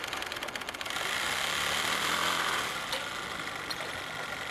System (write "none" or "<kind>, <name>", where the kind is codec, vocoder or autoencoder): none